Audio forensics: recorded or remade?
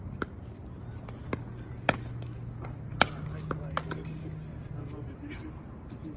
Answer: recorded